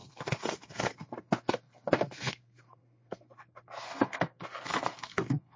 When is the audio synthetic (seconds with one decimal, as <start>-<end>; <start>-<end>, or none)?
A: 0.0-5.6